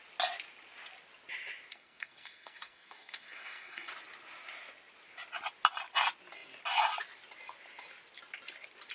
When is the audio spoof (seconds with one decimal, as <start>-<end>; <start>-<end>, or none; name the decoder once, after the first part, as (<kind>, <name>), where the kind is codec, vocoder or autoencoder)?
1.7-3.9 (codec, SNAC)